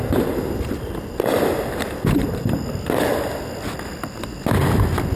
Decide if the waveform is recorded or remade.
recorded